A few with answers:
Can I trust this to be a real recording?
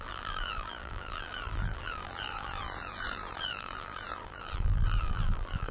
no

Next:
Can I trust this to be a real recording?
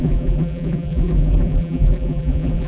no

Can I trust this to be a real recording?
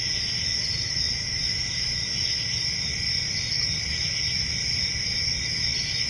yes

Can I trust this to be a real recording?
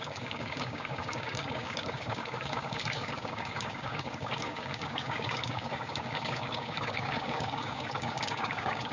no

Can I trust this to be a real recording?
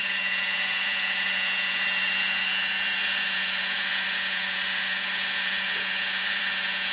no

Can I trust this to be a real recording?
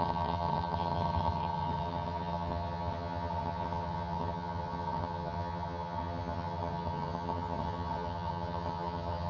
no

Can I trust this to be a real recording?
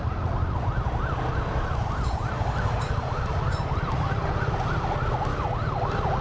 yes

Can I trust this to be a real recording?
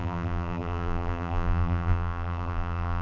no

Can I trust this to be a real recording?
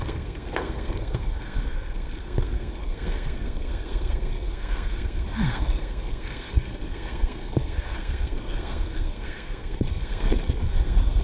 no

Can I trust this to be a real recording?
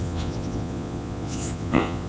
no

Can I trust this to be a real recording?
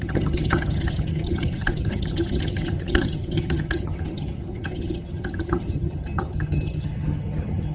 no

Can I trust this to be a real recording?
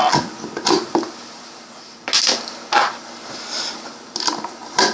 yes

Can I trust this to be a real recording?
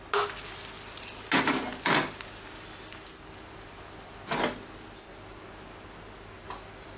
yes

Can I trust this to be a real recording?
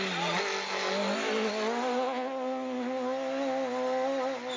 yes